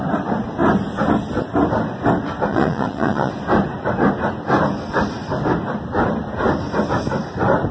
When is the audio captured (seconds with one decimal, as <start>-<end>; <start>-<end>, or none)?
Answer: 0.0-2.5; 3.3-7.7